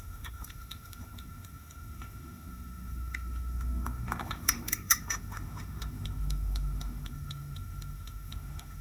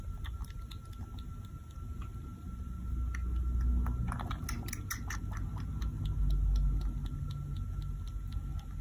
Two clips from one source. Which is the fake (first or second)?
first